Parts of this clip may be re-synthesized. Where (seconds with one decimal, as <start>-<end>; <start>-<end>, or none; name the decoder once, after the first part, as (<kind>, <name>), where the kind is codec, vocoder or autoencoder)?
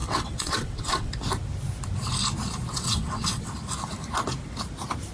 0.0-1.1 (vocoder, WaveNeXt); 2.7-3.5